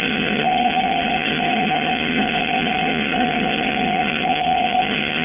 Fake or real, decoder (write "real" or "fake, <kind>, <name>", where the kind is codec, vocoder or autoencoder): fake, vocoder, HiFi-GAN